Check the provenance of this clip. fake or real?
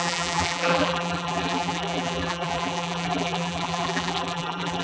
fake